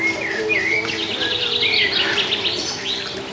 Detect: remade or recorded recorded